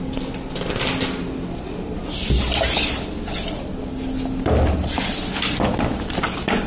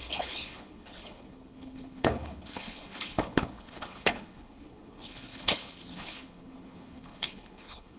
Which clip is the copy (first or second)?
second